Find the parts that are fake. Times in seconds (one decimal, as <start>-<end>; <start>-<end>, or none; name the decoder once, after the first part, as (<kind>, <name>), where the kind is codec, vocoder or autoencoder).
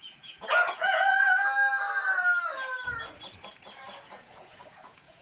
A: 0.0-1.4 (vocoder, Vocos); 3.9-5.2